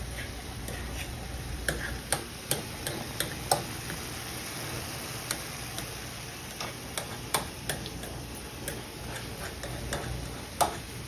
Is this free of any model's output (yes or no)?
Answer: yes